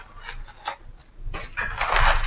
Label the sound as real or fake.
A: real